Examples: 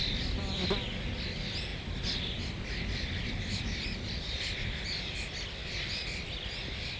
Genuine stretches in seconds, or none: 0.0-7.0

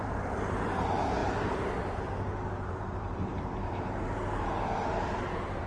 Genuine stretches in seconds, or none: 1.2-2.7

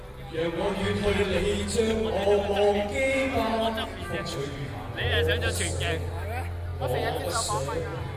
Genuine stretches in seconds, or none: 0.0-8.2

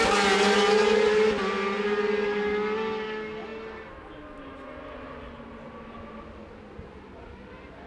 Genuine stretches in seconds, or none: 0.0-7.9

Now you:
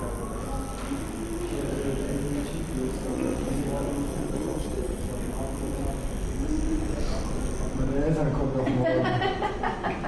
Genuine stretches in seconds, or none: 0.0-3.1; 3.6-4.1; 5.0-10.1